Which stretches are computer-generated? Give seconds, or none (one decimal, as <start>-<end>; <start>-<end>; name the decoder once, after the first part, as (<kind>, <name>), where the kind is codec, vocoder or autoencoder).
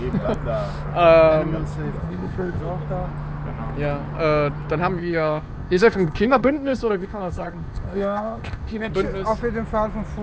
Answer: 2.0-2.6 (codec, ZipCodec); 5.0-8.9